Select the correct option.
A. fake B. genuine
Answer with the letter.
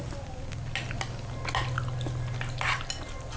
B